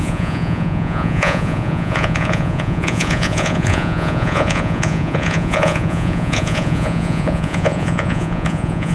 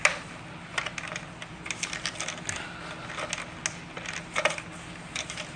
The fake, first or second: first